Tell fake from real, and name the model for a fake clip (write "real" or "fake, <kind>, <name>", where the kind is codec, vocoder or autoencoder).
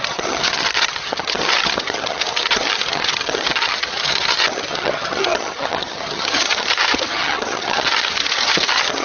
fake, vocoder, HiFi-GAN